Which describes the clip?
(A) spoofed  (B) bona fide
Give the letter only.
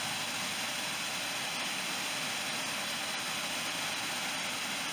B